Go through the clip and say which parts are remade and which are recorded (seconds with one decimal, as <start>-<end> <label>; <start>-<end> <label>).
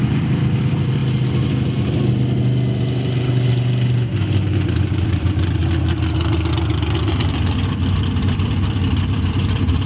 0.0-1.0 remade; 1.0-4.6 recorded; 4.6-5.6 remade; 5.6-8.2 recorded; 8.2-9.9 remade